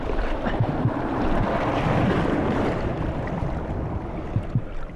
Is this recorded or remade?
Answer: recorded